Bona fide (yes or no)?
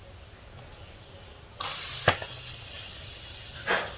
yes